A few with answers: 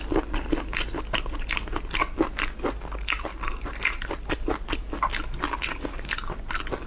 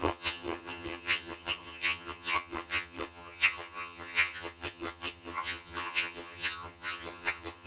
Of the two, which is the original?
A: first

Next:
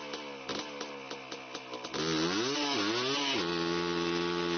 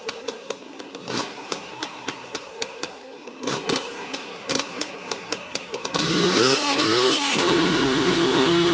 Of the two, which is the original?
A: first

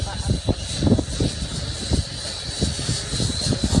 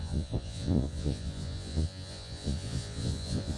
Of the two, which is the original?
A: first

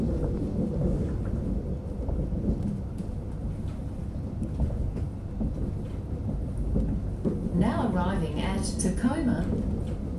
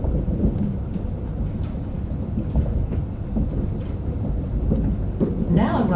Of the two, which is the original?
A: first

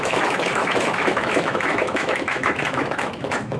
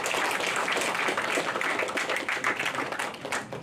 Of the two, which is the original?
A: second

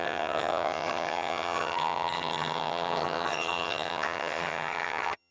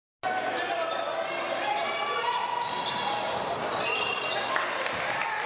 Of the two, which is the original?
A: second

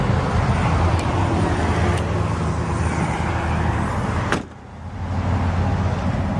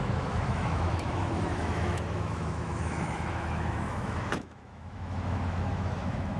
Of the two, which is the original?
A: first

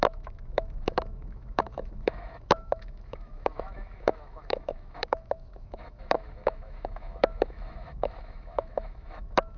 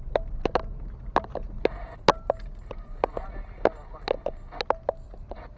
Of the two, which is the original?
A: second